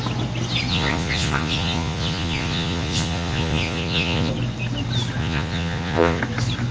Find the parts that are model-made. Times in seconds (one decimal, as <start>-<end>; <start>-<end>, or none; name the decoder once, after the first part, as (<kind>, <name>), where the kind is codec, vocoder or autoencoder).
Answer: 0.7-4.3 (vocoder, Vocos); 5.2-6.2